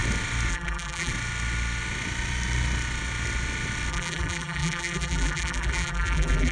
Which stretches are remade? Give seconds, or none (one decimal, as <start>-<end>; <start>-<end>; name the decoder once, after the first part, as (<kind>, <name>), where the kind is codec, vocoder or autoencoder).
0.5-1.1 (vocoder, BigVGAN v2); 3.9-6.5